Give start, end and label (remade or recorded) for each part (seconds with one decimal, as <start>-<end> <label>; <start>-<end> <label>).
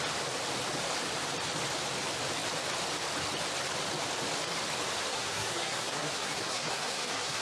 0.0-5.1 recorded; 5.1-7.4 remade